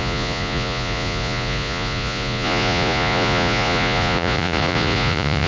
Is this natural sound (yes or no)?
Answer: no